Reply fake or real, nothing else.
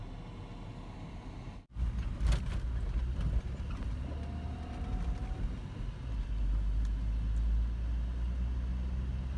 real